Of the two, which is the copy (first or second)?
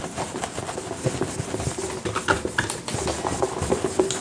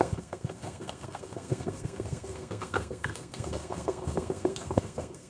second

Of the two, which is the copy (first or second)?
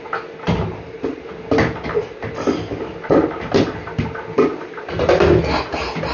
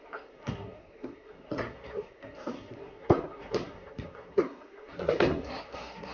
second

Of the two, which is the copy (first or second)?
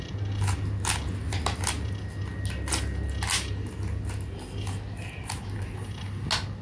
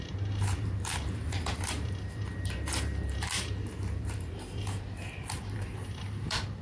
second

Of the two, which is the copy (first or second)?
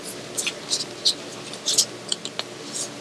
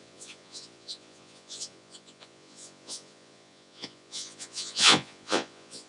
second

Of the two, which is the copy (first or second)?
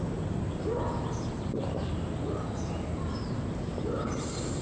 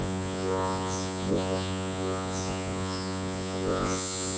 second